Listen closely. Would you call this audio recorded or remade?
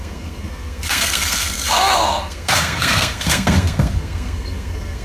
remade